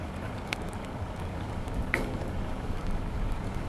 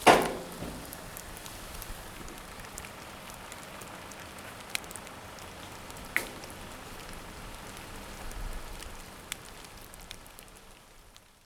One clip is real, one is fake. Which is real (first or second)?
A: second